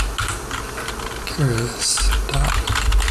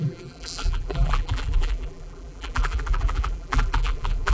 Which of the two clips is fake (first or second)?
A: second